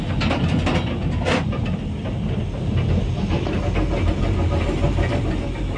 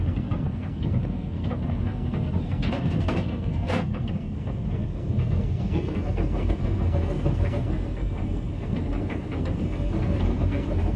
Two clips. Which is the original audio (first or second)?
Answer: first